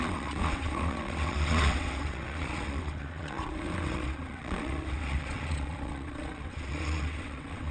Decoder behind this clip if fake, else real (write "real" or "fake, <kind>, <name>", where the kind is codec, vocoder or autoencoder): fake, vocoder, WaveNeXt